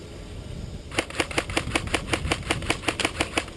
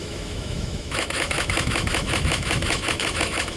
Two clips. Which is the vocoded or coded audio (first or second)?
second